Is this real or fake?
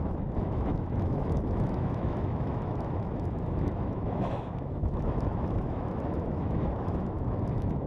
fake